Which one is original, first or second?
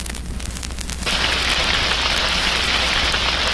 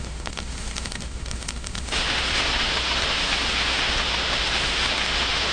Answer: first